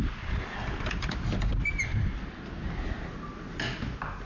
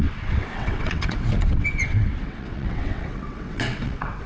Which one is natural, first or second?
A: first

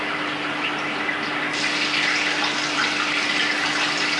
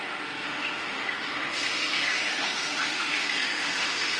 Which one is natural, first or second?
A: first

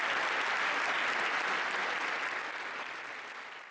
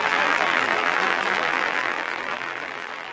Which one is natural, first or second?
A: first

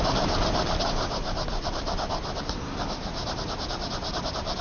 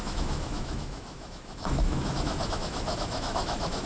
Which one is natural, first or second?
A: first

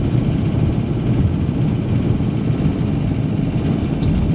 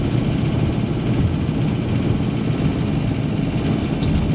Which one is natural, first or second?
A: second